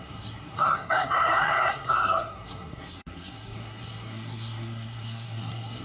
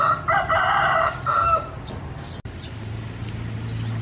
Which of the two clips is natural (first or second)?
second